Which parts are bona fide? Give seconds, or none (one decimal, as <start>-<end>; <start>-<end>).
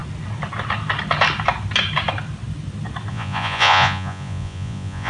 0.0-3.1